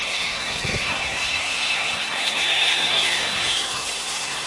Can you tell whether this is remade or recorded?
remade